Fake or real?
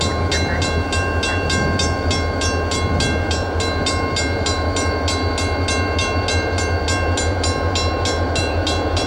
real